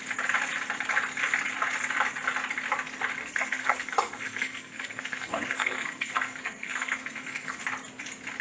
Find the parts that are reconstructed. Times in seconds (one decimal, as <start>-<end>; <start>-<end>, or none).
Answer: 3.2-7.6